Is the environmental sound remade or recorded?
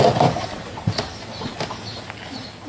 recorded